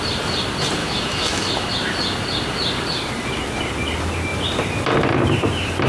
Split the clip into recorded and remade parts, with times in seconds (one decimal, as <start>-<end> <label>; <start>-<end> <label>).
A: 0.0-0.8 recorded; 0.8-1.7 remade; 1.7-5.9 recorded